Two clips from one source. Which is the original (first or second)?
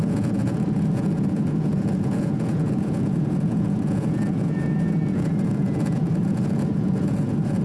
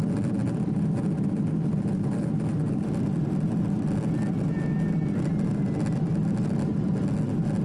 second